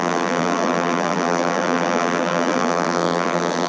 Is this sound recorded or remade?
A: remade